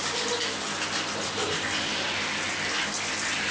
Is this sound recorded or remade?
recorded